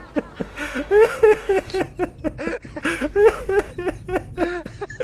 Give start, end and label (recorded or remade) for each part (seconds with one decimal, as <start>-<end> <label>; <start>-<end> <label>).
0.0-0.4 recorded; 0.4-1.8 remade; 1.8-2.8 recorded; 2.8-3.7 remade; 3.7-5.0 recorded

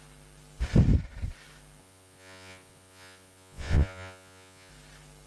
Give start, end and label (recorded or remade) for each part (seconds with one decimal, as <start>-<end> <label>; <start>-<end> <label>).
0.0-1.8 recorded; 1.8-4.7 remade; 4.7-5.3 recorded